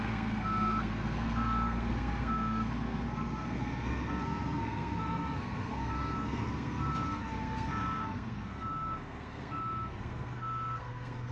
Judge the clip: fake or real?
fake